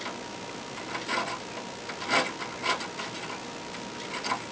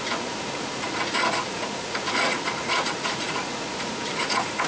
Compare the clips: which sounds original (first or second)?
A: first